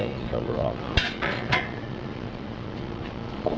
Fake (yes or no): yes